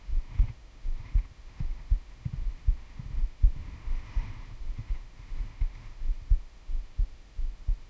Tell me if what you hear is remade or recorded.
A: remade